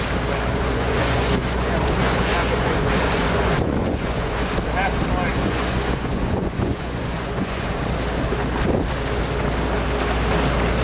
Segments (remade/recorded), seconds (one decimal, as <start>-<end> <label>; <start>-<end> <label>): 0.0-0.5 recorded; 0.5-4.5 remade; 4.5-5.3 recorded; 5.3-7.8 remade; 7.8-10.8 recorded